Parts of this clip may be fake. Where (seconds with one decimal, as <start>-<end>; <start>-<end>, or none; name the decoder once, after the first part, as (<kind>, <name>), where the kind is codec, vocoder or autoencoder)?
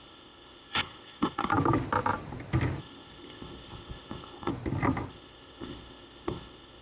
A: 0.0-1.5 (codec, ZipCodec); 2.8-4.5; 5.1-6.8